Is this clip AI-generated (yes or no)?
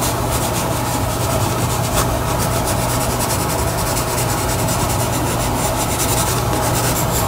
no